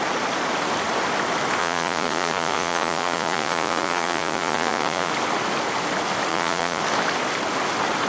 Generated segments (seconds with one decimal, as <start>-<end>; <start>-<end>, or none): 1.6-5.1; 6.3-6.8